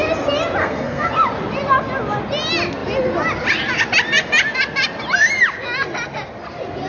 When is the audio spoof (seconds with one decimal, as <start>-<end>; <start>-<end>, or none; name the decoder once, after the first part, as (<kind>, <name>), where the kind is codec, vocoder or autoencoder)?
0.6-1.1 (codec, SNAC)